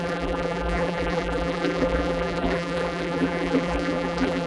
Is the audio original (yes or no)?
no